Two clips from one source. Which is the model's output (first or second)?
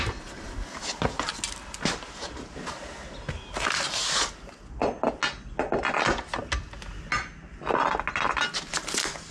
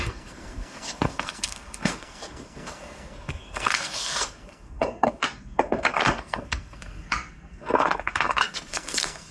second